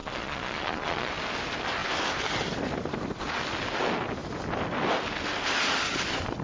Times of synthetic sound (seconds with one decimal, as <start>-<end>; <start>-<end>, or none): 0.0-1.1